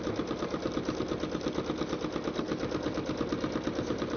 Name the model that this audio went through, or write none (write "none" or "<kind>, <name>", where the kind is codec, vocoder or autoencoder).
none